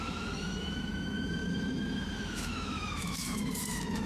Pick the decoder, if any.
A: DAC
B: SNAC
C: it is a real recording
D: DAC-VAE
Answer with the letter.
D